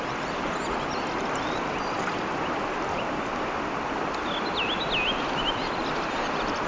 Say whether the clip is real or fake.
real